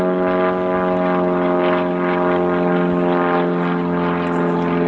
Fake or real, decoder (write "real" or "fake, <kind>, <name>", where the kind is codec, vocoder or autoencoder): real